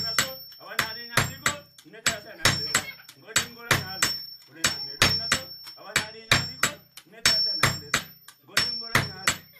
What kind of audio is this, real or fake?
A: real